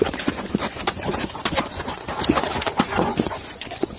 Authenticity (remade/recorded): remade